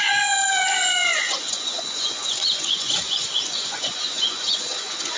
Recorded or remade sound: remade